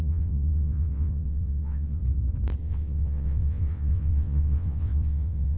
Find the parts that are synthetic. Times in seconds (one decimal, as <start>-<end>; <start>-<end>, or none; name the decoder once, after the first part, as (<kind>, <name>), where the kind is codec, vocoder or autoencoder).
0.0-2.0 (vocoder, WaveNeXt); 2.6-5.6